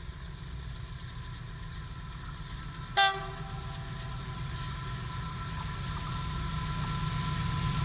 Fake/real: real